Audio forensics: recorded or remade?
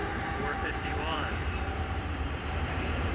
remade